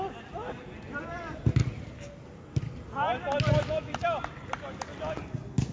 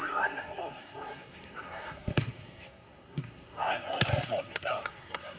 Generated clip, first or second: second